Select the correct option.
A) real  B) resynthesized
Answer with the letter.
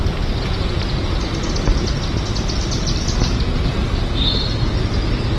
A